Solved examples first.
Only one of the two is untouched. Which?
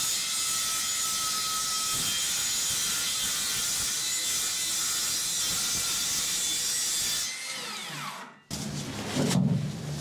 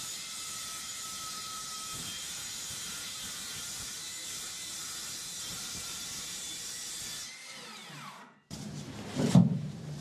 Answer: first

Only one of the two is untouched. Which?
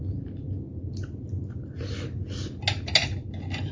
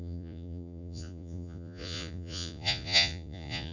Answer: first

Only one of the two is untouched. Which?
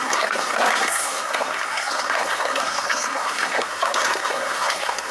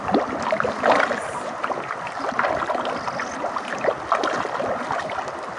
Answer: second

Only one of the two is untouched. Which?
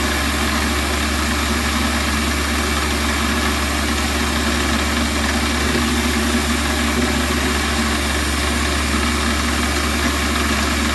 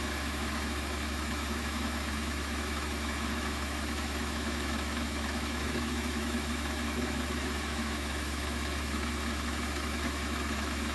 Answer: first